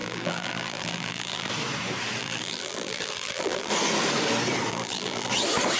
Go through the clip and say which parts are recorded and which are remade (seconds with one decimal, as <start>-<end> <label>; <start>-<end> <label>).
0.0-1.5 remade; 1.5-2.2 recorded; 2.2-3.7 remade; 3.7-4.7 recorded; 4.7-5.3 remade; 5.3-5.8 recorded